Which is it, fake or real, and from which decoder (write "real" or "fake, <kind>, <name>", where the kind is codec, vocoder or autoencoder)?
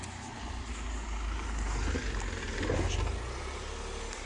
real